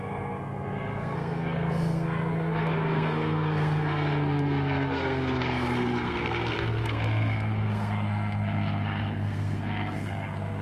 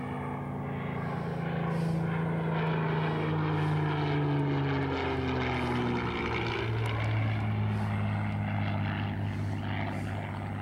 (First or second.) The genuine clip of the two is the second